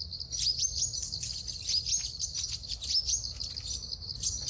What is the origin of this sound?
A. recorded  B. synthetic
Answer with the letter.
A